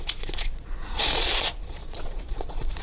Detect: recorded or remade remade